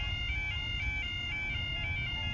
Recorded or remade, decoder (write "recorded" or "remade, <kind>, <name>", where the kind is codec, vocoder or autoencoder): recorded